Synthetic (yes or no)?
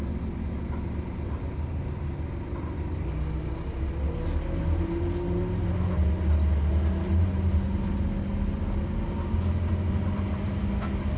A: no